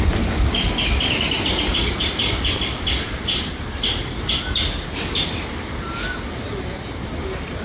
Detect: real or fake fake